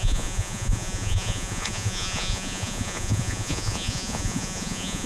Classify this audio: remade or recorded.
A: remade